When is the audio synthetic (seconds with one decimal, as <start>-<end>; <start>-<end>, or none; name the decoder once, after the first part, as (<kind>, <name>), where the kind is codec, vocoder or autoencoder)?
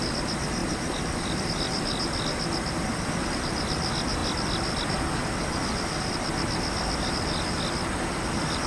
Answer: none